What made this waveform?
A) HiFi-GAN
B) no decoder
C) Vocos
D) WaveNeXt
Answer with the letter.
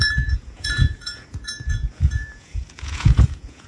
C